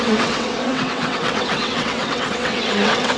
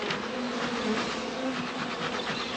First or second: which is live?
second